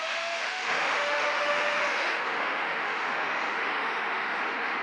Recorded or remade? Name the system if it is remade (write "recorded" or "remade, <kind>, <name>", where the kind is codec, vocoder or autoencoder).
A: remade, autoencoder, DAC-VAE